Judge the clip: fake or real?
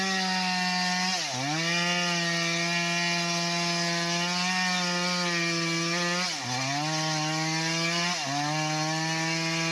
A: real